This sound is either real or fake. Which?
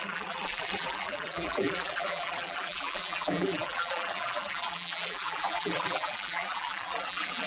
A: fake